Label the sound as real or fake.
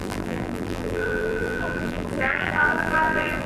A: fake